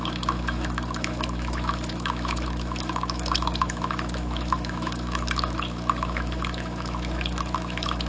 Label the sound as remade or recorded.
remade